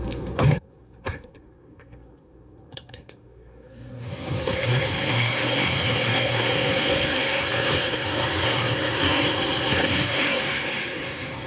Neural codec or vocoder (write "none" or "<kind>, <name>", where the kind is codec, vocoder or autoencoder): codec, SNAC